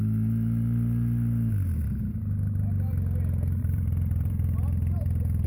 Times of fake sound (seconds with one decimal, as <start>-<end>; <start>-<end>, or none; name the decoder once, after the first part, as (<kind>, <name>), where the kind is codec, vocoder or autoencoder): 3.6-5.5 (vocoder, BigVGAN v2)